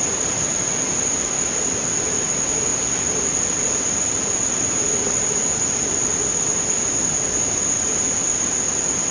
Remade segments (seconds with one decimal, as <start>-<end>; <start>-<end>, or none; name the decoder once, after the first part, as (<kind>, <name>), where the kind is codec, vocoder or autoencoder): none